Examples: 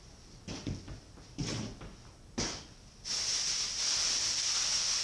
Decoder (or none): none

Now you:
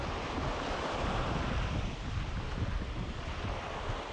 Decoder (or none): vocoder, BigVGAN v2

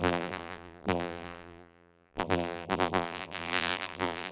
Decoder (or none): vocoder, BigVGAN v2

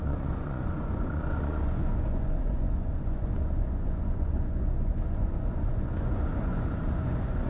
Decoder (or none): vocoder, Vocos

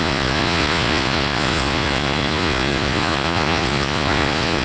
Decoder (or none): vocoder, Vocos